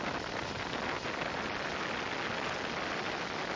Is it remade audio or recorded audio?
recorded